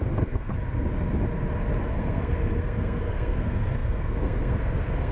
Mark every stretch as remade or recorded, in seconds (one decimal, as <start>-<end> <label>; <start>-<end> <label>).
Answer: 0.0-0.5 remade; 0.5-1.8 recorded; 1.8-5.1 remade